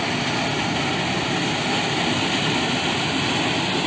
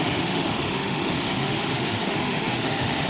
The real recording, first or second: first